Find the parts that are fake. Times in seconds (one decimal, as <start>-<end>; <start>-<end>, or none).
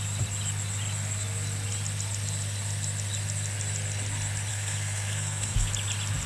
4.5-5.7